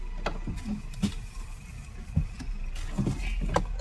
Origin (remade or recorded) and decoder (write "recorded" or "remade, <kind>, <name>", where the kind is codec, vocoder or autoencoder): recorded